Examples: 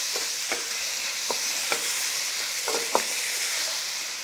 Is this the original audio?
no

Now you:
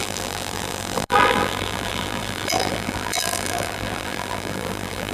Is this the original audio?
no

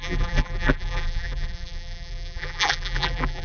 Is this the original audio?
no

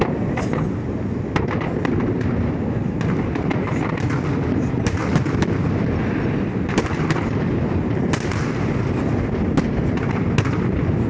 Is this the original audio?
yes